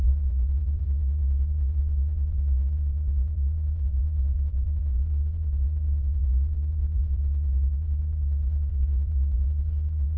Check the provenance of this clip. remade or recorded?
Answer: remade